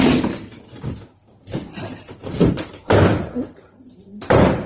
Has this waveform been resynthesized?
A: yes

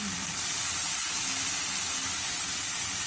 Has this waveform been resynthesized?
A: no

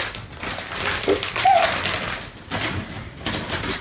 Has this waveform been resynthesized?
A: no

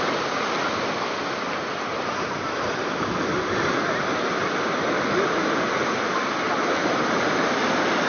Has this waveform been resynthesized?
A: no